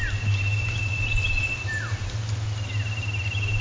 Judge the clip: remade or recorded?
recorded